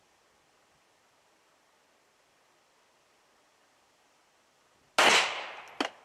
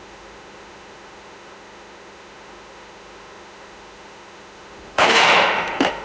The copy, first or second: second